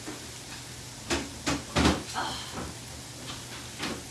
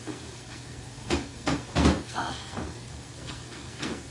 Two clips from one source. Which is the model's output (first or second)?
second